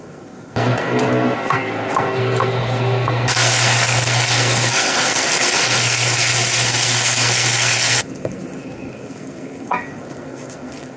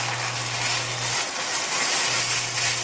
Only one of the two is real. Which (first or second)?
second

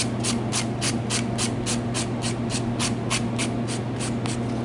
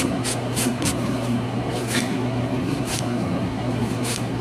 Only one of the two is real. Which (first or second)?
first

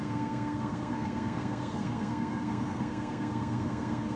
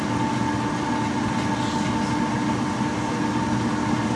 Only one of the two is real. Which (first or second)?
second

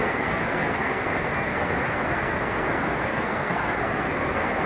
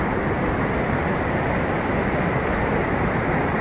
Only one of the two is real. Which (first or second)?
second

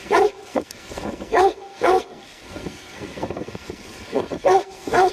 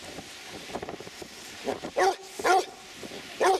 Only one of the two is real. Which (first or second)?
second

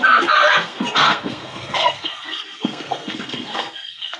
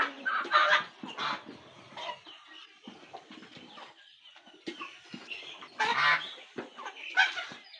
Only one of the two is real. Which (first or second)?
second